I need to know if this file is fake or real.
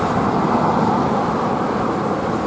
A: real